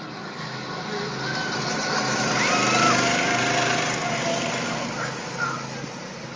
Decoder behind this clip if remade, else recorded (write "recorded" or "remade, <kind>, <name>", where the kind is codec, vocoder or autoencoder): recorded